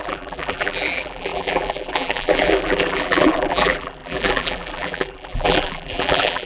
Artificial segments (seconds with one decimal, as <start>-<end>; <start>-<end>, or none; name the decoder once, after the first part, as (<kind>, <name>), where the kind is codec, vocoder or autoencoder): 0.0-6.5 (vocoder, BigVGAN v2)